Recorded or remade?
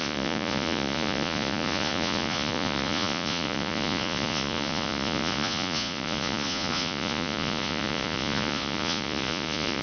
remade